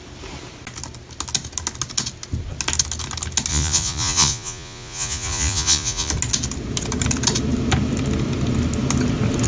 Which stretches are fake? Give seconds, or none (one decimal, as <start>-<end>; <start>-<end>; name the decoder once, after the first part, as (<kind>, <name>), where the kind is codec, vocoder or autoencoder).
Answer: 3.5-6.1 (vocoder, Vocos)